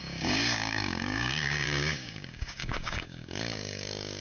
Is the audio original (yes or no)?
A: no